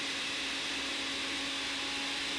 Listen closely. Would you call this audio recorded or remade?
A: recorded